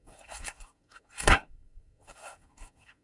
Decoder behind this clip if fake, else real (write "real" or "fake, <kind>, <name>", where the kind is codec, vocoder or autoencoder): fake, codec, SNAC